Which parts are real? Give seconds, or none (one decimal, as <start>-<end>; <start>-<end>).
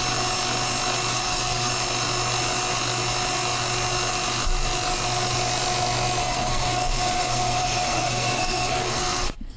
0.0-1.1; 1.7-6.2